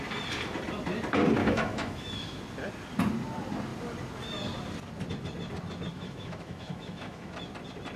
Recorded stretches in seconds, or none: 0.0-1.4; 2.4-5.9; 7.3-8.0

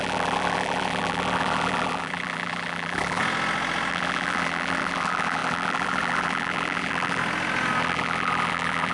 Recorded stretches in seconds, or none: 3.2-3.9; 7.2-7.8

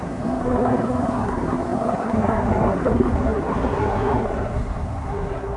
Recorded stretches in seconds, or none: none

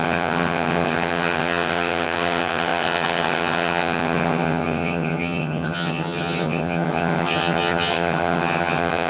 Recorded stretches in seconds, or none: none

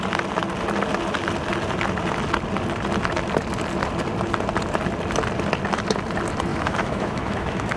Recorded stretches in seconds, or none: 0.0-6.5

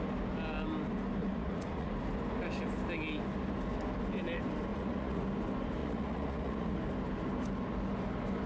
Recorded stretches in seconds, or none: 0.0-1.2; 1.9-4.7; 5.2-5.8; 6.8-8.5

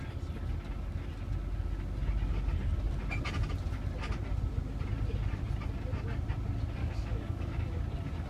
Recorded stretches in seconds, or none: 0.0-6.8; 7.8-8.3

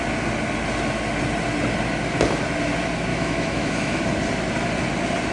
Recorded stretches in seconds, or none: 0.0-3.1; 4.0-5.3